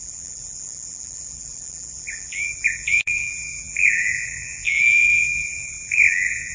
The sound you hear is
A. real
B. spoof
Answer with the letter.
B